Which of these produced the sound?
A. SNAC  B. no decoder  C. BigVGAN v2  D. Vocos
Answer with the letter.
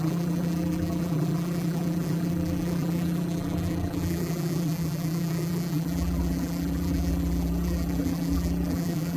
C